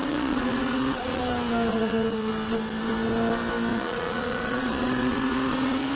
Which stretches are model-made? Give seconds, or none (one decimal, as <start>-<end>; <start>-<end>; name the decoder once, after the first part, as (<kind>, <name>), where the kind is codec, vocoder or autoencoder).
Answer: 0.0-1.2 (vocoder, Vocos); 1.7-2.3; 3.7-5.9